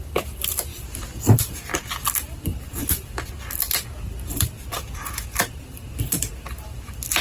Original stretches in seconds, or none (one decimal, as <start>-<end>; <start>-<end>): 0.0-7.2